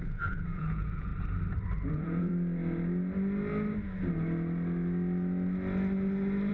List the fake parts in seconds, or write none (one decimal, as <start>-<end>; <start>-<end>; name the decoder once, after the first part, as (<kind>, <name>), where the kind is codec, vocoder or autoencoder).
0.0-1.1 (vocoder, Vocos); 1.9-2.3

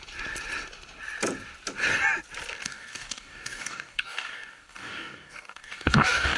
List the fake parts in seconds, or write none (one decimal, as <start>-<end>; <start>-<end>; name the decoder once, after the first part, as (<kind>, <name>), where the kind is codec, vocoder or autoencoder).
2.6-6.4 (codec, DAC)

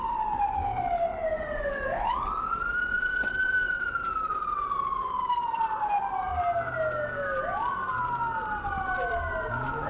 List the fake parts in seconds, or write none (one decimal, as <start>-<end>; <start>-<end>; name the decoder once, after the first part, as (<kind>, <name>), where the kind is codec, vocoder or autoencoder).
none

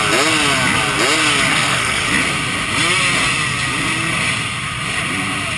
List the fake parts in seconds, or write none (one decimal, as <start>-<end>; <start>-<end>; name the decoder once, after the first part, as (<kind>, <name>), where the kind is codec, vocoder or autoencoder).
1.5-2.0 (codec, SNAC)

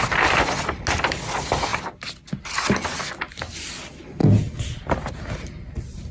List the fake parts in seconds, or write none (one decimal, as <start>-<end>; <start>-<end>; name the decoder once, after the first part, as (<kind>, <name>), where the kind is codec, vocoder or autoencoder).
none

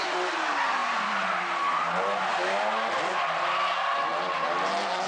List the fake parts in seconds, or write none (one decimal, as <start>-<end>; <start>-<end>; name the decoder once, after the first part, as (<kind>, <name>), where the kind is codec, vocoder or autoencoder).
0.8-1.7 (vocoder, BigVGAN v2)

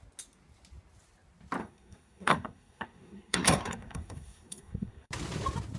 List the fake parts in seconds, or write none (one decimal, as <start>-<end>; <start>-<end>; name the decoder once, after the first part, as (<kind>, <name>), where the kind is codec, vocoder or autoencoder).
1.6-5.1 (codec, SNAC)

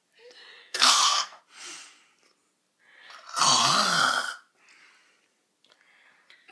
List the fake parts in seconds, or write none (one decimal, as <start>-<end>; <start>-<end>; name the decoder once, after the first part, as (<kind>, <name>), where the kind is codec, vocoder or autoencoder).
0.6-1.4 (codec, SNAC)